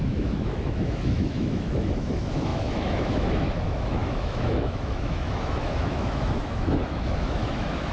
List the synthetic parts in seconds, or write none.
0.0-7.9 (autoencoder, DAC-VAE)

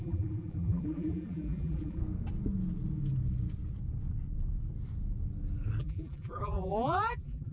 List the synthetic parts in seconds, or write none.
0.0-2.0 (vocoder, BigVGAN v2); 5.8-7.5

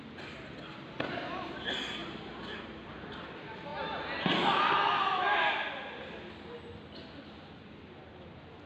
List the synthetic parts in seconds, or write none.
2.0-3.1 (vocoder, BigVGAN v2)

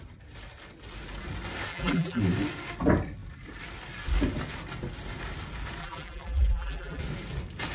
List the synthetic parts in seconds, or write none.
1.7-2.2 (vocoder, BigVGAN v2); 5.8-7.0

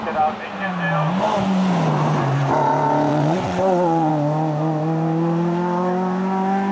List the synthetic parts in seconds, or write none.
3.1-4.1 (vocoder, WaveNeXt)

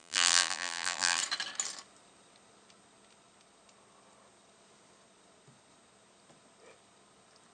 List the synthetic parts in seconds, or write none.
0.0-1.2 (vocoder, BigVGAN v2)